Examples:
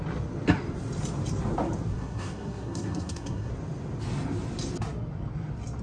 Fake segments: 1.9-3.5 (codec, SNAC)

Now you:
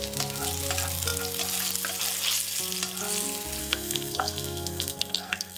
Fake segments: 3.6-5.6 (codec, SNAC)

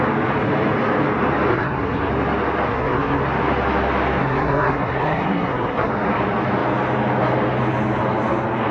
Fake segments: 1.5-2.1 (codec, SNAC); 2.7-3.2; 4.2-5.9

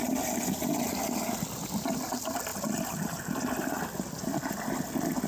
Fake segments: none